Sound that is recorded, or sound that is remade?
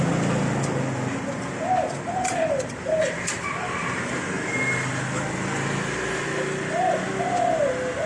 recorded